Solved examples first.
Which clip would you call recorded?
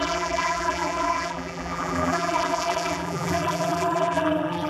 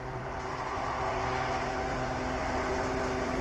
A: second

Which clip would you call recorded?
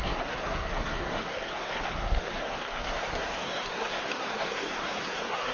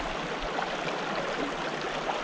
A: second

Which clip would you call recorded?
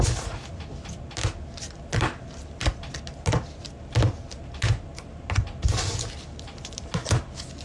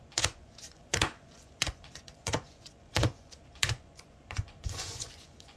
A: first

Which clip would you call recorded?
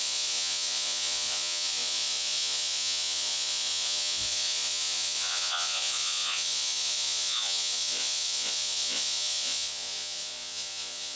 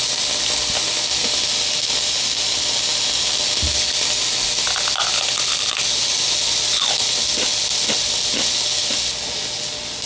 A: second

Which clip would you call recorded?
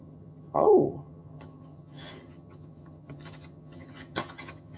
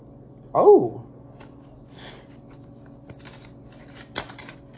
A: second